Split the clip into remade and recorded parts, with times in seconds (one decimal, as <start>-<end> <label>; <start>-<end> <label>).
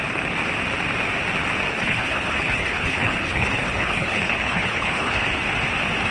0.0-1.7 recorded; 1.7-5.4 remade; 5.4-6.1 recorded